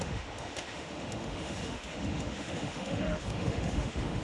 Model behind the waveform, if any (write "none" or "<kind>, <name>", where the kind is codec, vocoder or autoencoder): autoencoder, DAC-VAE